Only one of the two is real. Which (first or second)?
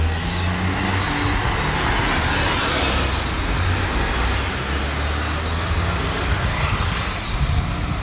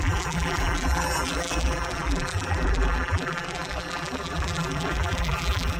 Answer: first